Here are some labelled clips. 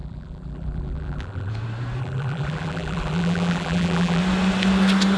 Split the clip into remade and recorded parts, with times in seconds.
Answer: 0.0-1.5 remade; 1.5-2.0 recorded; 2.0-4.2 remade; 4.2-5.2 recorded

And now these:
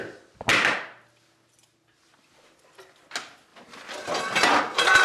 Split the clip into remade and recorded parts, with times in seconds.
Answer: 0.0-3.5 recorded; 3.5-4.2 remade; 4.2-5.0 recorded

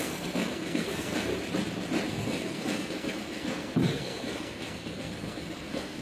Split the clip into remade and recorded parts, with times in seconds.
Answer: 0.0-1.3 remade; 1.3-2.1 recorded; 2.1-6.0 remade

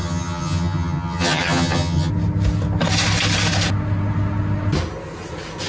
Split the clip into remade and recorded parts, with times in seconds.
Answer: 0.0-2.1 remade; 2.1-5.7 recorded

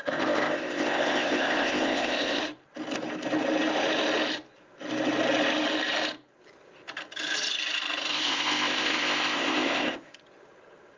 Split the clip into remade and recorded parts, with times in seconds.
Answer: 0.0-2.4 remade; 2.4-8.1 recorded; 8.1-10.1 remade; 10.1-11.0 recorded

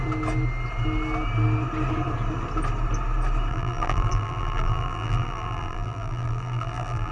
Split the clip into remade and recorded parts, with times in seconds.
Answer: 0.0-3.5 recorded; 3.5-7.1 remade

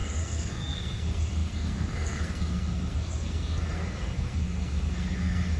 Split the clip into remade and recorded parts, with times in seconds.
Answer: 0.0-5.6 remade

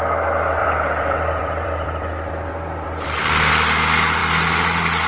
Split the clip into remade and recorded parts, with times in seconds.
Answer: 0.0-0.6 recorded; 0.6-3.5 remade; 3.5-5.1 recorded